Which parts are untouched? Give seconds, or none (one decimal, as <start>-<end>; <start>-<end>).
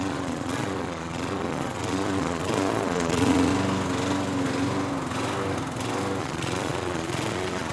3.5-6.2